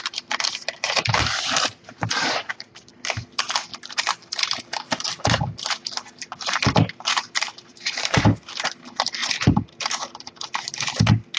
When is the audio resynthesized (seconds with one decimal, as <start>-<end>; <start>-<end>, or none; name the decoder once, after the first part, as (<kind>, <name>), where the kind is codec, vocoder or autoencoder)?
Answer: 0.6-2.9 (vocoder, BigVGAN v2); 3.7-8.5; 9.2-11.0